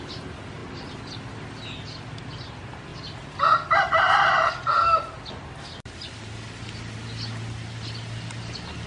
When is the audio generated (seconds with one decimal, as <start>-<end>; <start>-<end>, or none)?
none